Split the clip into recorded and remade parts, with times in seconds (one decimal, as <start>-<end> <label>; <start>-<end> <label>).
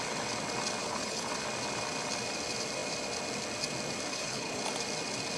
0.0-0.8 recorded; 0.8-1.3 remade; 1.3-4.1 recorded; 4.1-4.6 remade; 4.6-5.4 recorded